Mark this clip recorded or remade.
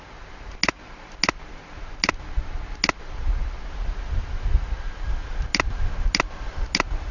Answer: recorded